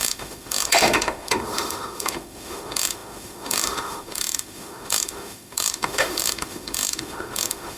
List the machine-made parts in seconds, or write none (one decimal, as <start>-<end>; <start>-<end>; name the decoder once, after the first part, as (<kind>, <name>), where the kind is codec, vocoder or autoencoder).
0.0-7.8 (autoencoder, DAC-VAE)